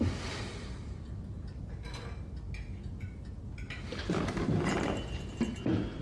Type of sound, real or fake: real